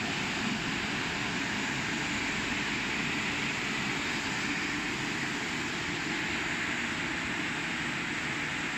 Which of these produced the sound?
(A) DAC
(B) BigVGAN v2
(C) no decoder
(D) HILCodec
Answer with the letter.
C